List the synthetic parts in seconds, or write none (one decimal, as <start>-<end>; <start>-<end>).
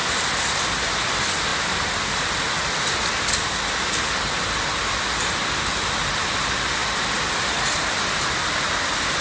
none